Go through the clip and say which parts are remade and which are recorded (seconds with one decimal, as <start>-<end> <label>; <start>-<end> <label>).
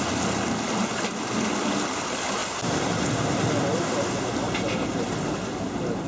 0.0-6.1 recorded